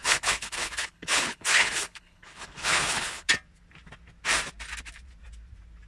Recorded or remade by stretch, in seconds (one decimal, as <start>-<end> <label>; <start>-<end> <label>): 0.0-3.3 remade; 3.3-5.9 recorded